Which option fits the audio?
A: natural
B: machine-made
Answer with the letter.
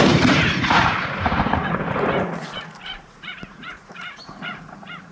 B